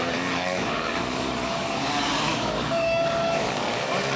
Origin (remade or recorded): remade